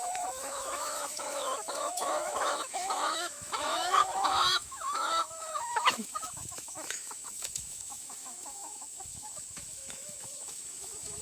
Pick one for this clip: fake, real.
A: fake